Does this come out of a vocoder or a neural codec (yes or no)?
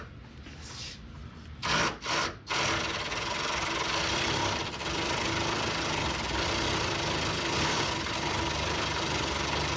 no